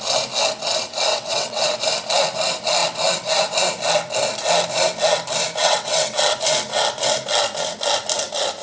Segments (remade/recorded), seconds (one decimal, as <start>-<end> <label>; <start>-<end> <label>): 0.0-1.1 recorded; 1.1-1.8 remade; 1.8-5.6 recorded; 5.6-6.2 remade; 6.2-8.6 recorded